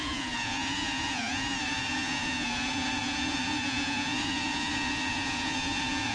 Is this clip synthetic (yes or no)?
yes